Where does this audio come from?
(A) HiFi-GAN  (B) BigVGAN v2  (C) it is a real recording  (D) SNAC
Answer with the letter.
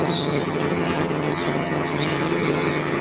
A